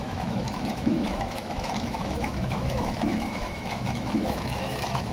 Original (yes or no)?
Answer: no